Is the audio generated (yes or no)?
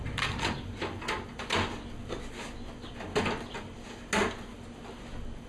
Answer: no